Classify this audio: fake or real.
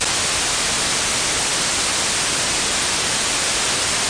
real